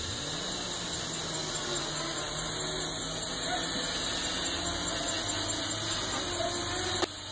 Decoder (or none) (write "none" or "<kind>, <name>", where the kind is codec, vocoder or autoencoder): none